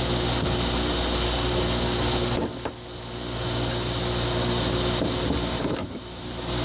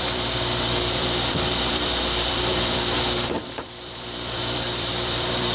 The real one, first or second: first